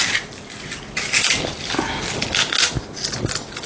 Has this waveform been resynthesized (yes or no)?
no